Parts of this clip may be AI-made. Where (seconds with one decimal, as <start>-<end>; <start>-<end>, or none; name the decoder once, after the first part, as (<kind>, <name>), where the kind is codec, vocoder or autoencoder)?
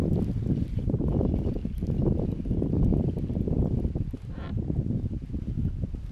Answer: none